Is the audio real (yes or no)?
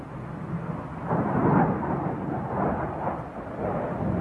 yes